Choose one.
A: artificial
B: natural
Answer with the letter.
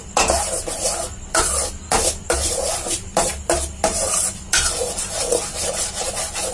B